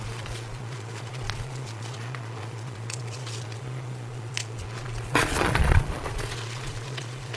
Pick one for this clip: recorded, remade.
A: remade